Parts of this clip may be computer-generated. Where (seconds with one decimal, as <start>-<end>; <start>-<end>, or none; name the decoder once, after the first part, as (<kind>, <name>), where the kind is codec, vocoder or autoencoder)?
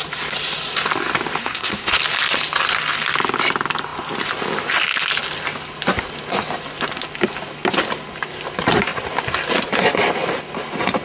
1.4-2.0 (codec, SNAC)